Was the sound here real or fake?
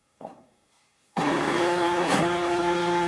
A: fake